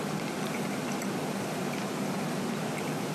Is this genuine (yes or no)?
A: yes